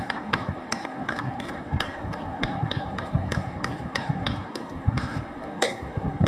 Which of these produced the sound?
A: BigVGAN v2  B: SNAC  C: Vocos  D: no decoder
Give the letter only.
B